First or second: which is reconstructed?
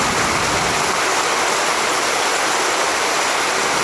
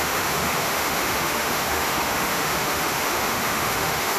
second